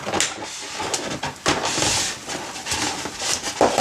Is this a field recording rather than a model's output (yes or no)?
yes